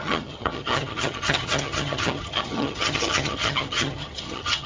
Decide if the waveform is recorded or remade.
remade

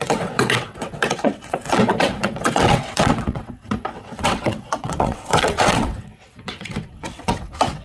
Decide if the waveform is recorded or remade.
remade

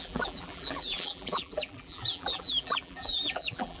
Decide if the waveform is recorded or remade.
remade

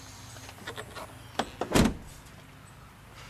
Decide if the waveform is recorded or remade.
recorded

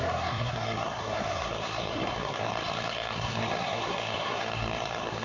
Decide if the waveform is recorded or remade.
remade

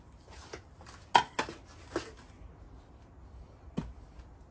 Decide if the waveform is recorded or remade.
recorded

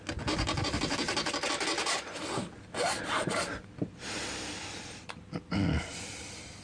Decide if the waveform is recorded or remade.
recorded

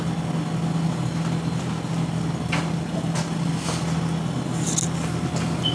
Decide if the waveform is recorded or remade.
recorded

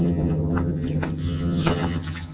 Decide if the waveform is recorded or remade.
remade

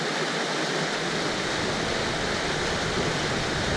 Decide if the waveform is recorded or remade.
recorded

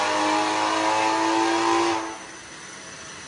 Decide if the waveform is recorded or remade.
recorded